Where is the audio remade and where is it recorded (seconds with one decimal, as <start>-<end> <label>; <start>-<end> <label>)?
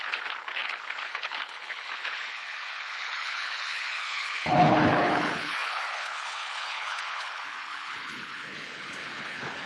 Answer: 0.0-9.7 remade